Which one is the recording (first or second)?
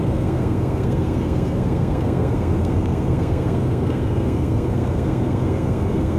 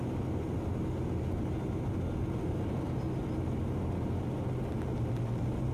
second